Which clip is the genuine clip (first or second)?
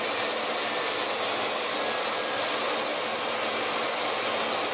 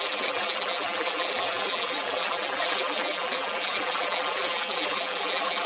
first